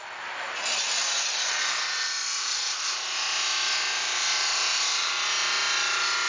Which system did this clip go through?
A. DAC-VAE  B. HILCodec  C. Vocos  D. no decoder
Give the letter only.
D